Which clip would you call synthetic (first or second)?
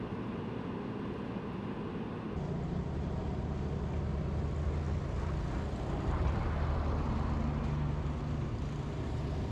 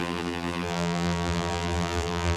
second